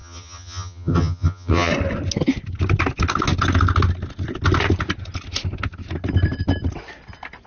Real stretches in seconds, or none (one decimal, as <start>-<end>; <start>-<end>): 1.7-7.5